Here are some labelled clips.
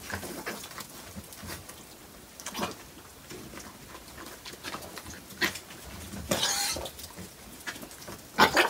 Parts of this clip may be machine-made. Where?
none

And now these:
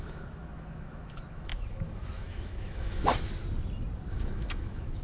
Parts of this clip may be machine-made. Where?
0.0-3.1 (autoencoder, DAC-VAE); 4.1-5.0

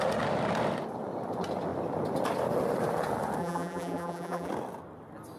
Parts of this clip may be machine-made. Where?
3.4-4.5 (vocoder, BigVGAN v2)